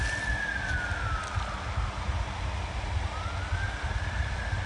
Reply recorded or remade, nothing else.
recorded